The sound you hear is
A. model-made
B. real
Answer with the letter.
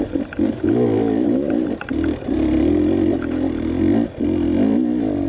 B